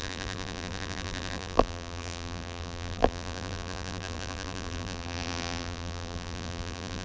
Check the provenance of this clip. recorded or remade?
remade